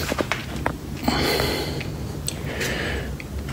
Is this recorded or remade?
recorded